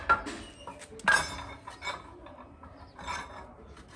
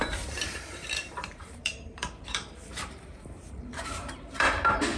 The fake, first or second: second